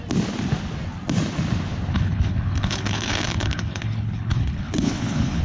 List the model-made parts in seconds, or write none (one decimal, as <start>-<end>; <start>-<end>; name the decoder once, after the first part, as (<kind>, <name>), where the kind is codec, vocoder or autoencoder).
1.9-5.4 (codec, HILCodec)